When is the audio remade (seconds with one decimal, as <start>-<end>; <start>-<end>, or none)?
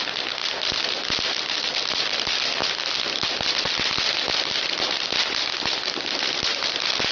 none